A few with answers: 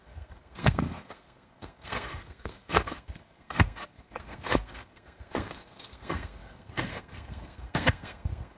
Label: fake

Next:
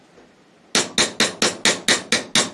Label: real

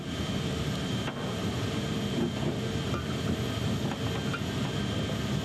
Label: real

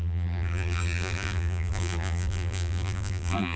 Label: fake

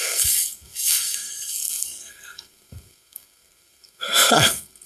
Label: fake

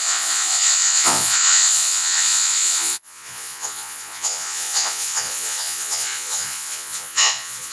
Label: fake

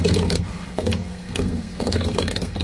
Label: fake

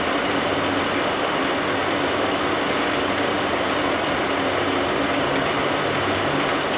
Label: real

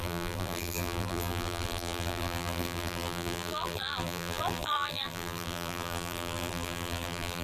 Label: fake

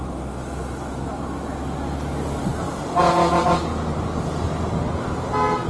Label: real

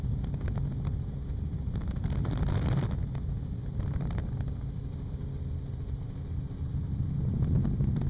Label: real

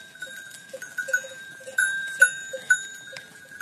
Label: fake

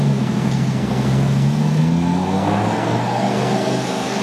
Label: fake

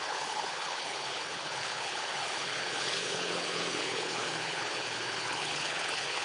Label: fake